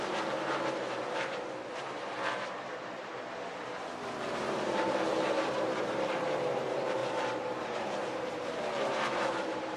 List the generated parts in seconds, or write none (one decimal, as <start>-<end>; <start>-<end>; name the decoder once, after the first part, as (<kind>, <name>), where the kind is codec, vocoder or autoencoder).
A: 0.0-9.8 (vocoder, BigVGAN v2)